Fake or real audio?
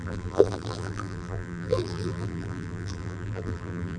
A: fake